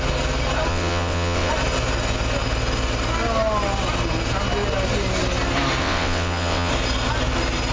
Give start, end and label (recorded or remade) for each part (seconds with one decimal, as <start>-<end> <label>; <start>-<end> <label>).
0.0-0.7 recorded; 0.7-1.5 remade; 1.5-5.8 recorded; 5.8-6.7 remade; 6.7-7.7 recorded